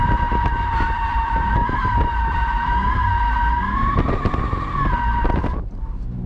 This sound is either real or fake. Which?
real